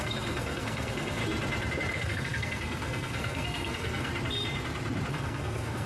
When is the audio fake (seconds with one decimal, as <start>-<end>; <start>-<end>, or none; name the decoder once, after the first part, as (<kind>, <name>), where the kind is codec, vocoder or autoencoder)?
0.0-1.2 (codec, SNAC); 1.9-4.1; 5.1-5.9